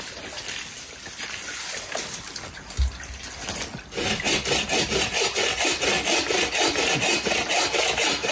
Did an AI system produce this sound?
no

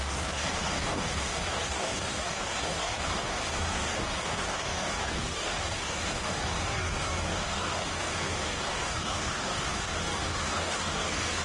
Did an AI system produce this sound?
yes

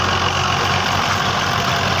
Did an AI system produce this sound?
no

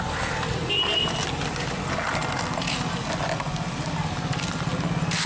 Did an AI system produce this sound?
no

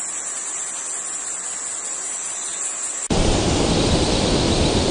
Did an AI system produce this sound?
no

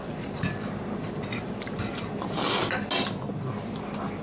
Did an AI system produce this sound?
no